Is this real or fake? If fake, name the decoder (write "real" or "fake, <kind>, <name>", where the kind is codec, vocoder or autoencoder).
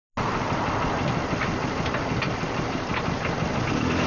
real